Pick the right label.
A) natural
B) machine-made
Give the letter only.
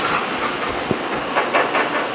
A